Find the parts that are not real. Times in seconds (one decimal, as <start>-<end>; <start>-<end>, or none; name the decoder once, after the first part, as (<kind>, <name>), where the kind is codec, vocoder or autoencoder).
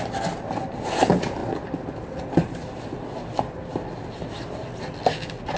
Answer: none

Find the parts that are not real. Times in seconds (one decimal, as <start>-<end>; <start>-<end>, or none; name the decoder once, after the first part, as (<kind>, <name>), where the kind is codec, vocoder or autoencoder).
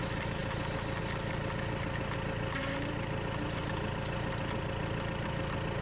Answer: none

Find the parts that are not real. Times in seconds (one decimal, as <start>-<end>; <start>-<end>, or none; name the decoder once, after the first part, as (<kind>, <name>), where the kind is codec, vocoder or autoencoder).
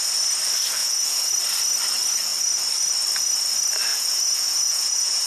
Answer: 0.8-1.3 (vocoder, Vocos); 3.9-5.3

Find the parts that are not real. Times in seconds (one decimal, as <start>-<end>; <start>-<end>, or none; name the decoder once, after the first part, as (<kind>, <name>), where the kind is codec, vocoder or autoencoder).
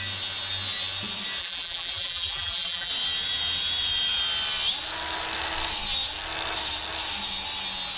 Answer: 1.4-2.9 (vocoder, BigVGAN v2)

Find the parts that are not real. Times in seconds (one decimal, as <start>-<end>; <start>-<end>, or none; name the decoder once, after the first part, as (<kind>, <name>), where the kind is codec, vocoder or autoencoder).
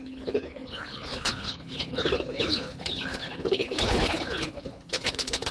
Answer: 0.0-5.5 (codec, HILCodec)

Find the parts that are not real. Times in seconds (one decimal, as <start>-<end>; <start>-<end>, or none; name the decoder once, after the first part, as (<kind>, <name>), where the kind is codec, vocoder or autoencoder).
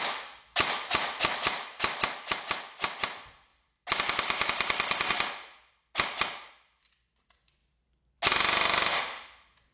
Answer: none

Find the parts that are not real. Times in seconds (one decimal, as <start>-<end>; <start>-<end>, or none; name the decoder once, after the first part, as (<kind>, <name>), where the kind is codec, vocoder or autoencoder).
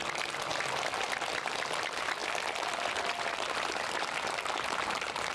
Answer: none